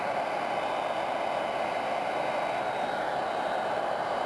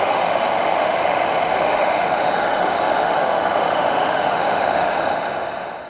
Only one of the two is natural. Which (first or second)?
first